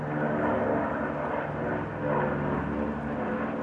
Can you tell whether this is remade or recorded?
recorded